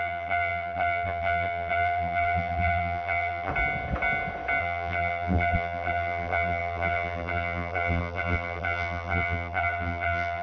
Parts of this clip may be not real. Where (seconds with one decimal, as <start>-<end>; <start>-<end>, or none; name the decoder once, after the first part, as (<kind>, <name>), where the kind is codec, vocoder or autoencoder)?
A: 0.0-3.5 (vocoder, BigVGAN v2); 4.6-10.4